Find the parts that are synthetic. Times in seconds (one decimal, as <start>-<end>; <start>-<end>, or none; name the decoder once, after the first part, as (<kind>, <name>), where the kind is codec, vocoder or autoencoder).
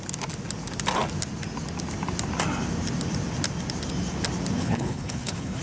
4.6-5.6 (codec, HILCodec)